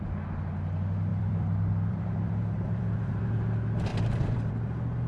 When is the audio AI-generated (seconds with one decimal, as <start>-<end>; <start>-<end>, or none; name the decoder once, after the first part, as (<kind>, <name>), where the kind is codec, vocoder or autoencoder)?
1.1-3.3 (vocoder, BigVGAN v2); 3.9-4.5